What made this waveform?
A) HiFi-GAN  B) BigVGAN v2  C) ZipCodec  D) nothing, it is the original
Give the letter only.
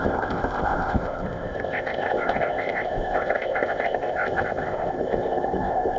C